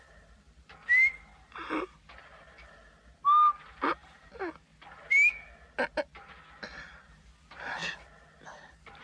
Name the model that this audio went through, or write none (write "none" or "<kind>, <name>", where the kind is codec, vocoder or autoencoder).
none